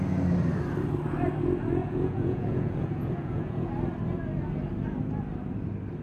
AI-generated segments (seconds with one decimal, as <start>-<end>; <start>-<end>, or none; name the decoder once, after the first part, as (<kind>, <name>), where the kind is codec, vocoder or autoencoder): 1.8-3.7 (vocoder, Vocos)